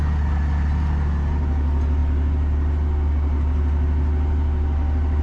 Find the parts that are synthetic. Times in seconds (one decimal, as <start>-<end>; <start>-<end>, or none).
none